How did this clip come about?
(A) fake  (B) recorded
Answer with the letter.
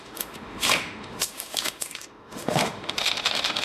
A